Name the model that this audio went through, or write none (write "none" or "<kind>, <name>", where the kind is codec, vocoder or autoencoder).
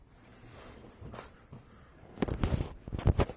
none